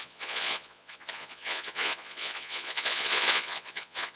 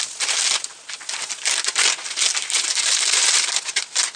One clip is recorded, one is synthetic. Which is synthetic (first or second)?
first